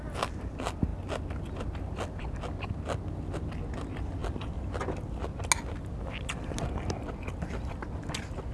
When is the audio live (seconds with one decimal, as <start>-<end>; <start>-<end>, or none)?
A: 0.0-8.5